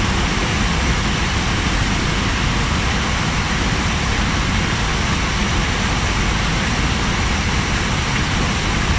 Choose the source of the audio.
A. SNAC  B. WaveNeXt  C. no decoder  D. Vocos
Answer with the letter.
C